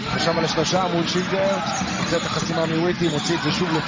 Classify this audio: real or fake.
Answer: real